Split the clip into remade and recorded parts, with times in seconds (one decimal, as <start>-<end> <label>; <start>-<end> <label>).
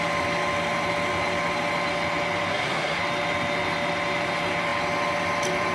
0.0-2.5 recorded; 2.5-3.0 remade; 3.0-5.7 recorded